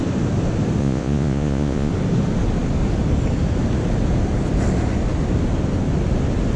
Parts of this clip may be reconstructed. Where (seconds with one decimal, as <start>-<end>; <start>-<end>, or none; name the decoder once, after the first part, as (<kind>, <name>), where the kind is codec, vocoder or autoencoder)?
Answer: 0.8-1.9 (vocoder, Vocos)